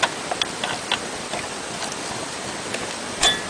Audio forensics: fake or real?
fake